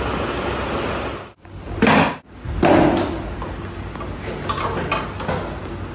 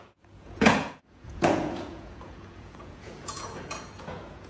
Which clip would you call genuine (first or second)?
first